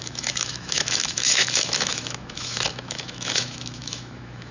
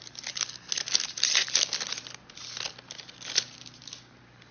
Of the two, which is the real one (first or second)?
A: second